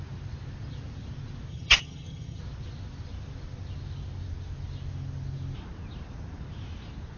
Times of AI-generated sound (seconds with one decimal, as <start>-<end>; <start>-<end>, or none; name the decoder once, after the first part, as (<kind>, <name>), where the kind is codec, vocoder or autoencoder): 1.5-2.4 (vocoder, HiFi-GAN)